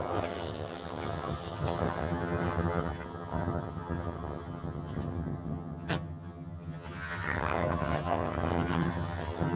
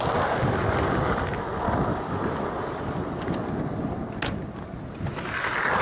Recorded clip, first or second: second